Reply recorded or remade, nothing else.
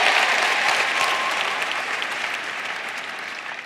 remade